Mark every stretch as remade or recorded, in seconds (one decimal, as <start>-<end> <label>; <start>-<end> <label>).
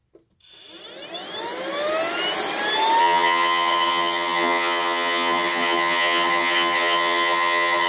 0.0-3.0 recorded; 3.0-7.9 remade